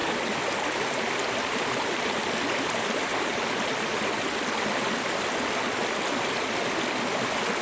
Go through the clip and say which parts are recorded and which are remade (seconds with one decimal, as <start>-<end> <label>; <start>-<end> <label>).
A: 0.0-7.6 recorded